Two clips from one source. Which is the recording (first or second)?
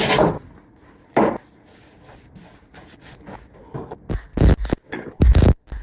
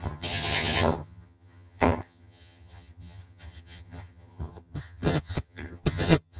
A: first